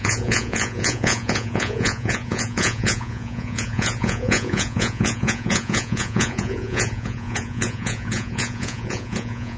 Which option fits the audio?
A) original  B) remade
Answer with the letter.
B